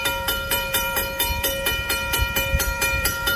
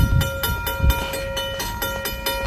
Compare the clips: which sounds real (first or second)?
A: second